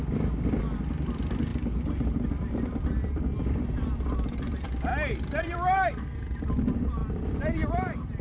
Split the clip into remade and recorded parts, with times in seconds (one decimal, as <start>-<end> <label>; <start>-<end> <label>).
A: 0.0-0.6 recorded; 0.6-1.5 remade; 1.5-2.3 recorded; 2.3-4.9 remade; 4.9-5.4 recorded; 5.4-8.2 remade